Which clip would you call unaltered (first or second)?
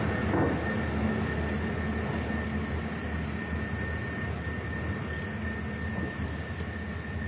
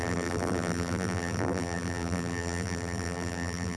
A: first